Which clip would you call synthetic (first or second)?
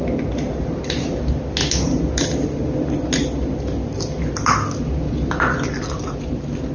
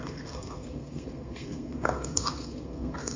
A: second